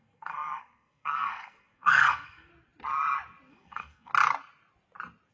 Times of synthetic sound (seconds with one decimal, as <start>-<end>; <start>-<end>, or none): 0.0-2.5; 3.5-4.1